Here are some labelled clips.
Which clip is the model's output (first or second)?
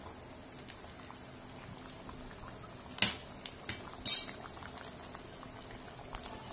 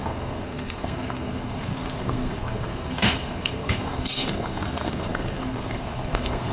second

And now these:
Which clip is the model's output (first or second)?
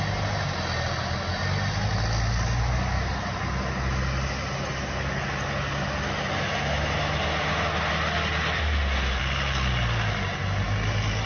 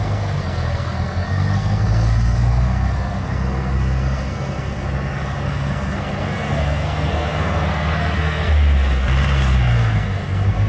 second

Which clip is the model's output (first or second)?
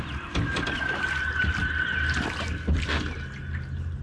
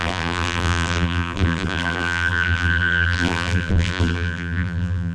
second